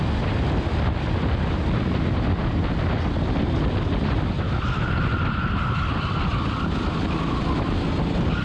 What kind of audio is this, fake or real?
real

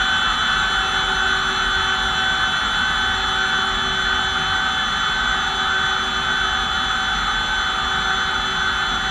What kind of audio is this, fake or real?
real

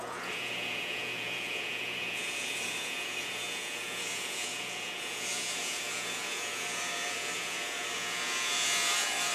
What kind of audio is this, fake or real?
fake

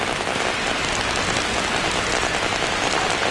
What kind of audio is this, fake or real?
real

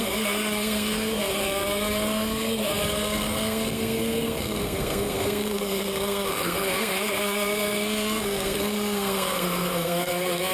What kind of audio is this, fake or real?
fake